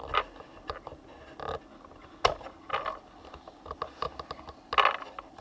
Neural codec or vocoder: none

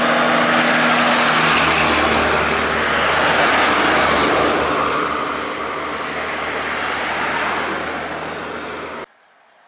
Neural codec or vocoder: none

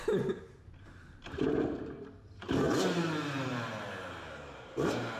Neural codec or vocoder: vocoder, BigVGAN v2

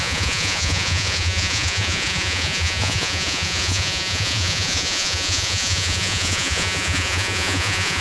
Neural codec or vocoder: vocoder, Vocos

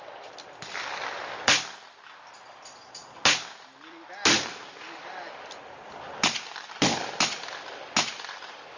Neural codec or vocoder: none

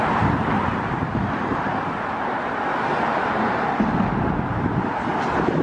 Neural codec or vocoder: none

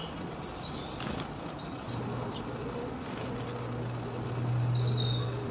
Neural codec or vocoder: none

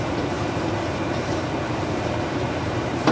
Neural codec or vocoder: vocoder, BigVGAN v2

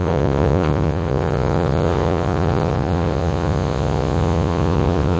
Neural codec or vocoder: vocoder, Vocos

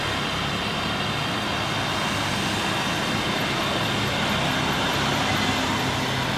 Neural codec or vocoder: none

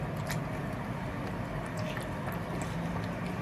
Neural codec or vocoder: none